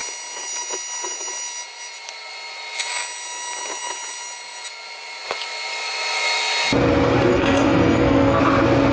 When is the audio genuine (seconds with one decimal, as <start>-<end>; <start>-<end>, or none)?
0.0-7.3; 8.4-8.9

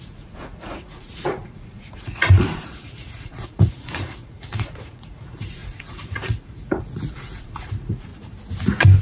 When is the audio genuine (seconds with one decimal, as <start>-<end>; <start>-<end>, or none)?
8.1-9.0